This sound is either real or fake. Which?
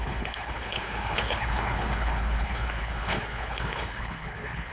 fake